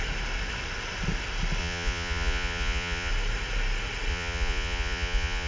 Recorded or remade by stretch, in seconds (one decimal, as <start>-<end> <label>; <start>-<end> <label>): 0.0-1.6 recorded; 1.6-3.1 remade; 3.1-4.1 recorded; 4.1-5.5 remade

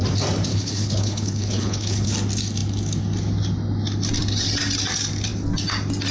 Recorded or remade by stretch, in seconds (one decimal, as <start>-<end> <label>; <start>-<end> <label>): 0.0-0.5 recorded; 0.5-2.1 remade; 2.1-6.1 recorded

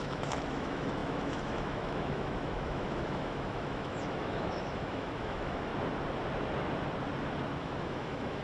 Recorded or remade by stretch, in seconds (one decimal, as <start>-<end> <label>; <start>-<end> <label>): 0.0-5.7 remade; 5.7-7.6 recorded; 7.6-8.4 remade

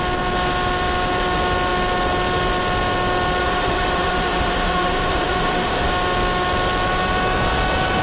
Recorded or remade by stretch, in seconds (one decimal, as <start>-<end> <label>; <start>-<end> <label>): 0.0-3.4 recorded; 3.4-5.9 remade; 5.9-8.0 recorded

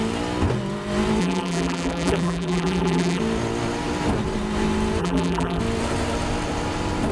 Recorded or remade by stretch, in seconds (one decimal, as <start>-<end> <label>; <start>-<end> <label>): 0.0-1.2 recorded; 1.2-3.2 remade; 3.2-5.0 recorded; 5.0-5.6 remade; 5.6-7.1 recorded

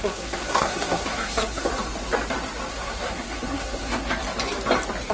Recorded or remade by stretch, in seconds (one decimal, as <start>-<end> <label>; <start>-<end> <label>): 0.0-1.7 remade; 1.7-2.7 recorded; 2.7-4.2 remade; 4.2-5.1 recorded

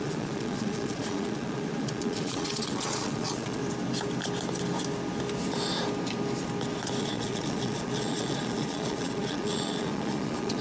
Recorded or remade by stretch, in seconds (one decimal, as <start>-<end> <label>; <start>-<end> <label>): 0.0-3.6 remade; 3.6-7.0 recorded; 7.0-10.6 remade